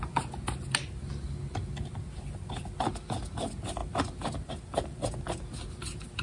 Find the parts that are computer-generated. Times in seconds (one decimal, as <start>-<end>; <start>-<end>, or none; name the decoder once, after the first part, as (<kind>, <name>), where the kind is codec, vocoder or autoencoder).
none